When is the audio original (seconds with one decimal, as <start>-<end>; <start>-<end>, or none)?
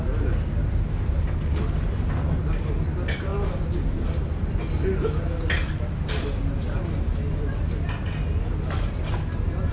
0.0-9.7